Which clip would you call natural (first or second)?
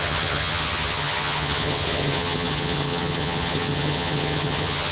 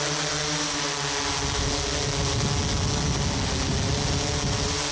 second